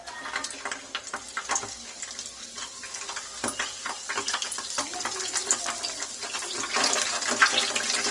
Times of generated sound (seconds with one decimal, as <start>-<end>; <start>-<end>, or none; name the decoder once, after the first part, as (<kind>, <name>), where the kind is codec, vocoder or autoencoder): none